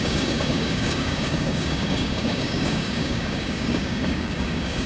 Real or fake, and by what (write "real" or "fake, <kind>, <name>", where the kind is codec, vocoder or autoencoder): fake, codec, DAC